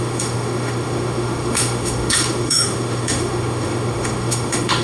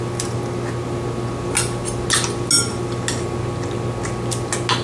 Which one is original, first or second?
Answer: second